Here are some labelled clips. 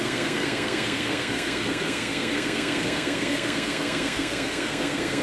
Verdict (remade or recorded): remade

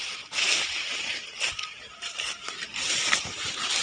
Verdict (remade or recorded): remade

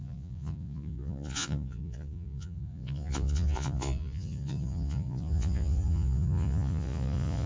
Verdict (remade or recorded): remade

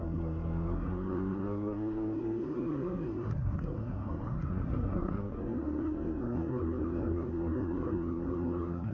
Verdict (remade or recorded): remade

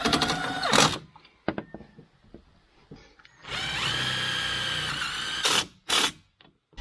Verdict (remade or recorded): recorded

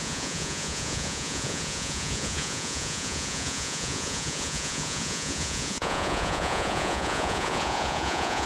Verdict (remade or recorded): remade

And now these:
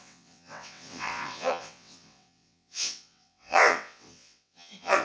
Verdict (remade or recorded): remade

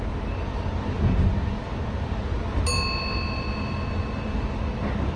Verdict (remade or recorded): recorded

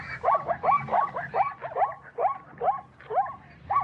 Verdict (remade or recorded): recorded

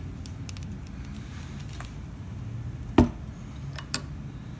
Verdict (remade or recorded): recorded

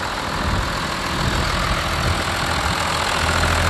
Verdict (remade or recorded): recorded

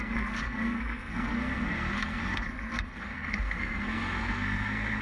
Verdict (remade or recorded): remade